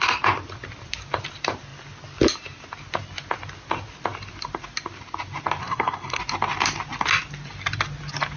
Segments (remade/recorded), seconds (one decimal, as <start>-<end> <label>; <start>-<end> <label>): 0.0-5.6 recorded; 5.6-6.2 remade; 6.2-8.4 recorded